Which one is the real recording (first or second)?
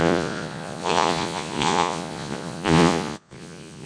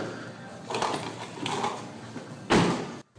second